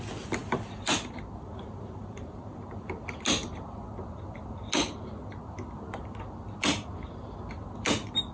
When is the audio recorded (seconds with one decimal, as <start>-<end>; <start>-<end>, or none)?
0.0-8.3